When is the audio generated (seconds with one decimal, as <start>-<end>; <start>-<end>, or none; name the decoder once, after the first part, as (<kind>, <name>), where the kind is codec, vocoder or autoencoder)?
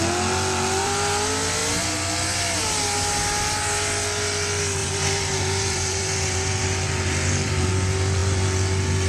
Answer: 4.8-7.7 (vocoder, BigVGAN v2)